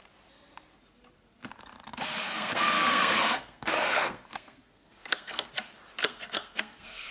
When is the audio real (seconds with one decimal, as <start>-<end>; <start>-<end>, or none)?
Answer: 0.0-2.2; 5.5-6.0